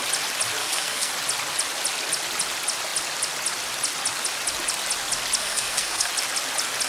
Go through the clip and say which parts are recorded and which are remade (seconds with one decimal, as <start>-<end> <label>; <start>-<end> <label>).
0.0-0.6 recorded; 0.6-1.1 remade; 1.1-5.4 recorded; 5.4-6.1 remade; 6.1-6.9 recorded